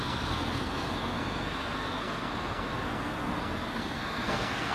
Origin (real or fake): fake